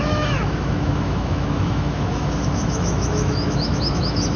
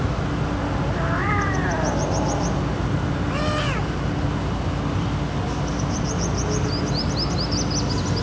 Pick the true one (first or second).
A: second